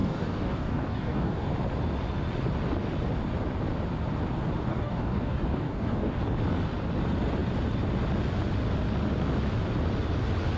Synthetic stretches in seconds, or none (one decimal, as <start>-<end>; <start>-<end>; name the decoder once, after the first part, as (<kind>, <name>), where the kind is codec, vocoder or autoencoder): 0.0-1.5 (codec, DAC); 4.7-6.2